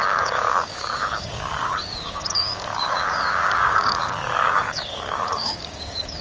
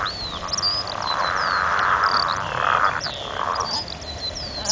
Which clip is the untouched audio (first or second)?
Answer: second